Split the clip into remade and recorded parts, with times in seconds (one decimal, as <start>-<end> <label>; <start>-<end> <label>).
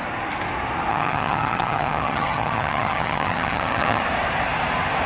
0.0-0.9 recorded; 0.9-4.0 remade; 4.0-5.1 recorded